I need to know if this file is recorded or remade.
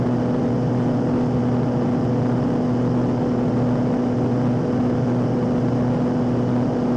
recorded